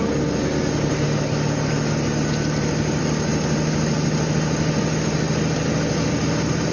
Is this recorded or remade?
recorded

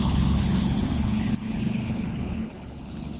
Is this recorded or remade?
remade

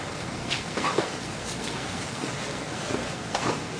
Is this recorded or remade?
remade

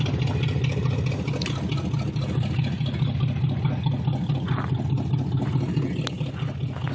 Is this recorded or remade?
recorded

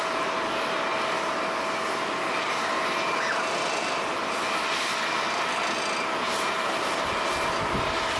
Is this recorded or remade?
recorded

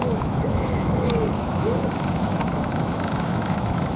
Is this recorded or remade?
remade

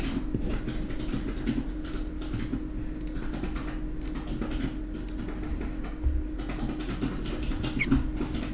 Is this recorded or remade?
recorded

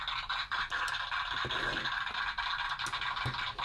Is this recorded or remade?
recorded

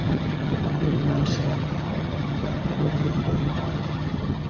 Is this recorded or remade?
remade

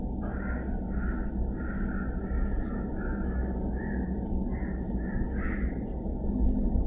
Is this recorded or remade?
recorded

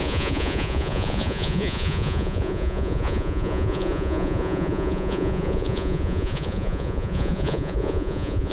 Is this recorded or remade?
remade